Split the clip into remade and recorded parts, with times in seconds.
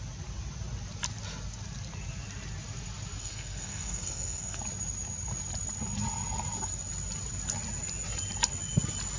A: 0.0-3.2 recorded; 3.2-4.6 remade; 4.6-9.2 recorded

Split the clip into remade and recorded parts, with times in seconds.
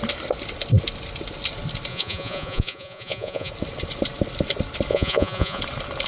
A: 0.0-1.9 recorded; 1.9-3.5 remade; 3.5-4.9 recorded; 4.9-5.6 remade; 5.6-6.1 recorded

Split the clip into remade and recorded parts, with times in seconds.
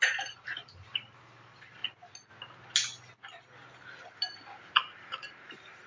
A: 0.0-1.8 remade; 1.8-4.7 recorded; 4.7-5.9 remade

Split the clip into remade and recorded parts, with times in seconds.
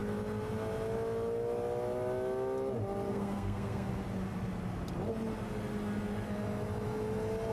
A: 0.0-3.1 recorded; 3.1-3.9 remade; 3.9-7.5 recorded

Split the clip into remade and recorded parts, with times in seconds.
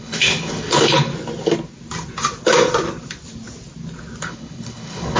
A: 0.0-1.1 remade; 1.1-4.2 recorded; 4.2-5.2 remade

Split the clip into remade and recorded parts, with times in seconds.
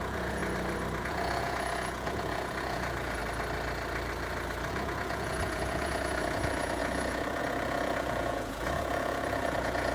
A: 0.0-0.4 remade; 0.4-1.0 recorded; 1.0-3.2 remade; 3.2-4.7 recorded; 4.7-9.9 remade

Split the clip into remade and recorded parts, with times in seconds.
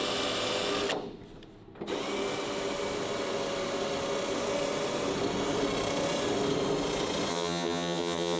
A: 0.0-7.3 recorded; 7.3-8.4 remade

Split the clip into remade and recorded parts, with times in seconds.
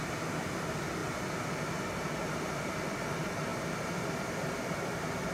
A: 0.0-5.3 recorded